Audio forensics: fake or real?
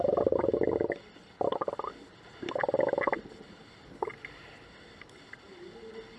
real